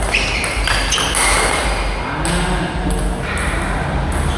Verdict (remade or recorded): recorded